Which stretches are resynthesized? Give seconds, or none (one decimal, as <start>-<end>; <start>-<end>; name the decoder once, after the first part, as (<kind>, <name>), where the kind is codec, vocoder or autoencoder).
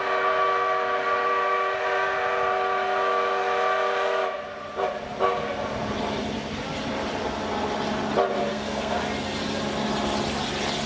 8.5-9.0 (codec, SNAC)